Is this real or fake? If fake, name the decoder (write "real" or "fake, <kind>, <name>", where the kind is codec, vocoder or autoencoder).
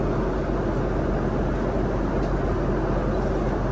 real